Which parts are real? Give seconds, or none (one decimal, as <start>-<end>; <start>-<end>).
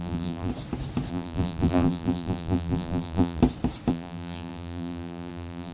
0.5-1.1; 3.4-3.9